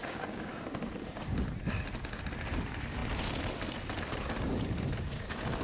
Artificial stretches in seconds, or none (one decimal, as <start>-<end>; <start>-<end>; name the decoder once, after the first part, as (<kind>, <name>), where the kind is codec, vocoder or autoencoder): 0.0-0.5 (codec, DAC)